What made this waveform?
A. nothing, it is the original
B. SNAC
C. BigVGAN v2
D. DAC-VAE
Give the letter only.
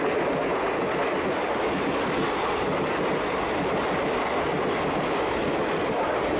A